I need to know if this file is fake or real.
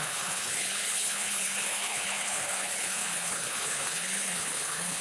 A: fake